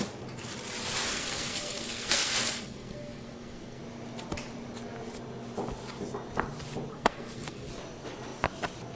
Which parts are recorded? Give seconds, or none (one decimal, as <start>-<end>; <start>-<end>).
0.0-1.1; 3.8-6.9; 7.7-9.0